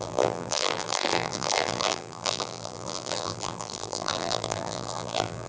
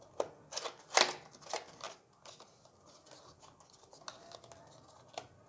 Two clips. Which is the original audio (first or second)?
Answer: second